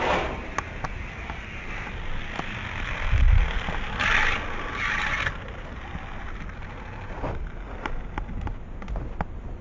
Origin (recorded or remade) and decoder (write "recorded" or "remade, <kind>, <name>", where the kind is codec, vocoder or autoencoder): recorded